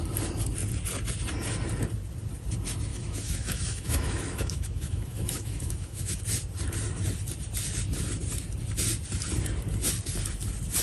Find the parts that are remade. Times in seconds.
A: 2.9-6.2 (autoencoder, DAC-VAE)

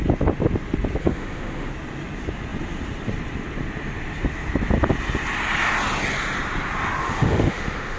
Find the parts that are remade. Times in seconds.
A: 1.0-1.7 (autoencoder, DAC-VAE); 7.0-8.0

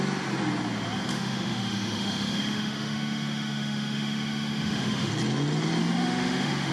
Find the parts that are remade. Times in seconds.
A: 1.1-5.1 (autoencoder, DAC-VAE); 5.8-6.7